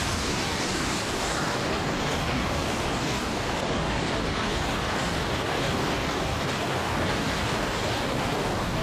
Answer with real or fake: fake